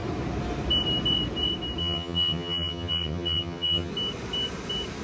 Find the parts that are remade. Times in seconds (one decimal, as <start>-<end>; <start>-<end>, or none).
1.8-3.9